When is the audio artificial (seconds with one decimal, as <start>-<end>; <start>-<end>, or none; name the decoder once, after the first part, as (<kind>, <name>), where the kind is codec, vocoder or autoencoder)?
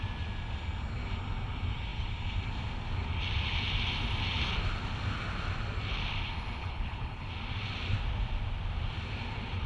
6.6-7.3 (codec, HILCodec)